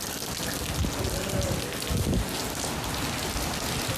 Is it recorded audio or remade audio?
recorded